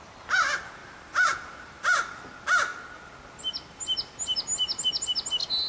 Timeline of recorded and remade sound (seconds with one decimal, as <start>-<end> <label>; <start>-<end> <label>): 0.0-0.8 recorded; 0.8-2.2 remade; 2.2-5.7 recorded